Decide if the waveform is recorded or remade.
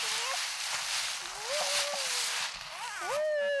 recorded